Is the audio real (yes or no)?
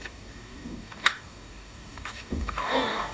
no